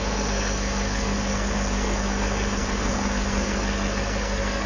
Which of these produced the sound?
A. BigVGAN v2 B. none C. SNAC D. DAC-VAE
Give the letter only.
C